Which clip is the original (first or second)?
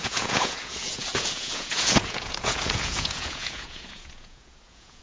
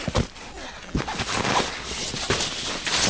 second